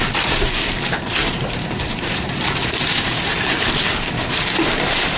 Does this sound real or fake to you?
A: fake